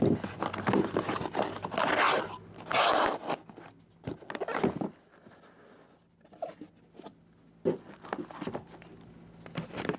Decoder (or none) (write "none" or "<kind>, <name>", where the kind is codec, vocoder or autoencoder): none